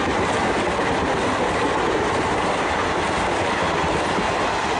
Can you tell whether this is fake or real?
real